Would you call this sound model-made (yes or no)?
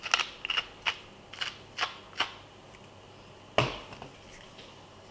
no